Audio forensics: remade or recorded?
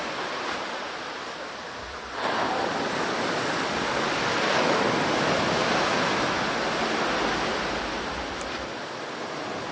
recorded